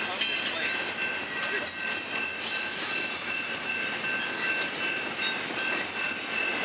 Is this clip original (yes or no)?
yes